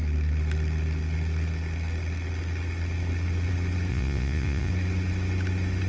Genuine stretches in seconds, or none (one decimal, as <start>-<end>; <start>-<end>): 0.0-3.9; 4.7-5.9

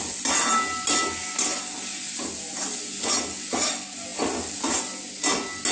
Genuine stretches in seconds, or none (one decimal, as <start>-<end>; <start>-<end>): 0.0-5.7

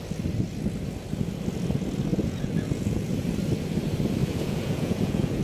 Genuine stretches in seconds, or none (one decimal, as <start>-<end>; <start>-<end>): 0.0-2.1; 3.1-4.2

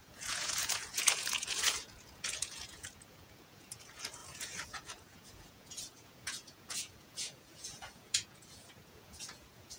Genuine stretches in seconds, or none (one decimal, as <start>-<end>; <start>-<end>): none

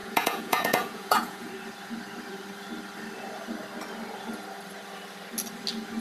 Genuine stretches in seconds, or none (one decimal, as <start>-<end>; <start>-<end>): 1.5-6.0

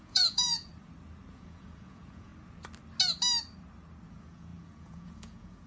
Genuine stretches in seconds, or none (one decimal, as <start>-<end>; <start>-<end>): 0.7-1.3; 2.3-4.1

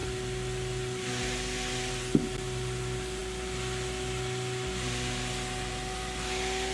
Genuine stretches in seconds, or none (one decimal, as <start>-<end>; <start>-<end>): 0.0-6.7

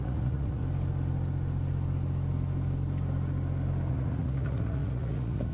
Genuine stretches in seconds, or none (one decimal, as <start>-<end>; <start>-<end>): 0.6-3.9